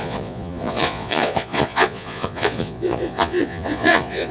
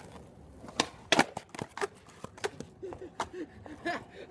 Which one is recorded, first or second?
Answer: second